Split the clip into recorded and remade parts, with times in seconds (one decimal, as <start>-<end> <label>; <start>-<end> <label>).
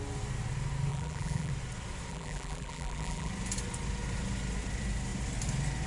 0.0-0.9 recorded; 0.9-1.5 remade; 1.5-2.1 recorded; 2.1-3.3 remade; 3.3-5.9 recorded